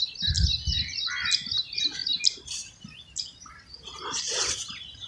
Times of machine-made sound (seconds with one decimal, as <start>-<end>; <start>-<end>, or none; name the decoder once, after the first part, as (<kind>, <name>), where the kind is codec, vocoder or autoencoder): none